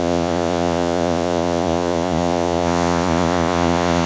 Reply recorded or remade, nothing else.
remade